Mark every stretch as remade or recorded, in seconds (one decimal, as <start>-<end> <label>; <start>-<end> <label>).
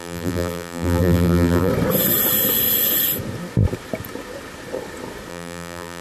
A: 0.0-1.7 remade; 1.7-5.3 recorded; 5.3-6.0 remade